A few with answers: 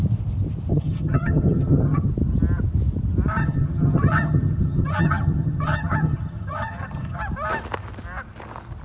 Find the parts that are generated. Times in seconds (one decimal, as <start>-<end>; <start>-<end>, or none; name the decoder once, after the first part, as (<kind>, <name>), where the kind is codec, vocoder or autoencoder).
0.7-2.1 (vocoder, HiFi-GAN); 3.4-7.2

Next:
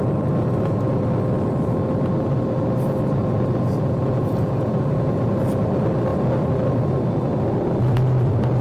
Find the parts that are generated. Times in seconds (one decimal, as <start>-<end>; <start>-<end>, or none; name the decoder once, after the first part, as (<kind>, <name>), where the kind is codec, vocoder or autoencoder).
3.2-5.2 (vocoder, Vocos)

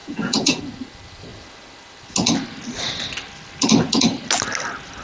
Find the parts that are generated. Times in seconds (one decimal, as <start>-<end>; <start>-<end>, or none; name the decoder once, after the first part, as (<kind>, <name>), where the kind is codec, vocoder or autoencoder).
0.0-0.6 (vocoder, Vocos)

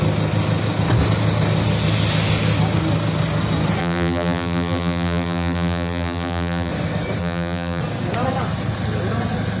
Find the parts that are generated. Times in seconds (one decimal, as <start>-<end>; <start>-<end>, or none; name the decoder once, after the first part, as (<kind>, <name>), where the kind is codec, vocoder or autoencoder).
3.8-6.7 (vocoder, BigVGAN v2); 7.2-7.8

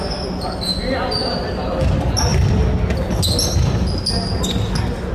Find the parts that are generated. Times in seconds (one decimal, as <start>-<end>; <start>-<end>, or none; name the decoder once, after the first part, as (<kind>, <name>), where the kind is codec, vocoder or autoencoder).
none

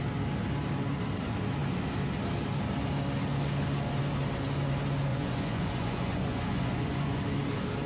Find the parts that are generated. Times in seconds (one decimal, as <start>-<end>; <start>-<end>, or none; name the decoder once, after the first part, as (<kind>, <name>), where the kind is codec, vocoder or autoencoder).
5.1-7.2 (vocoder, Vocos)

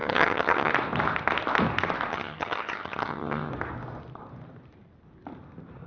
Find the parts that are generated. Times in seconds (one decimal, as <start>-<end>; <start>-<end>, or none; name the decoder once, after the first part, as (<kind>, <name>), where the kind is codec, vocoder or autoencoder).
0.0-0.7 (vocoder, HiFi-GAN); 2.1-3.5

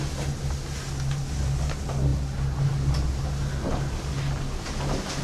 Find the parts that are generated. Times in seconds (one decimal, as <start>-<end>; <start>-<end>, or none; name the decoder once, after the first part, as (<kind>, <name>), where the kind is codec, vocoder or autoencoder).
none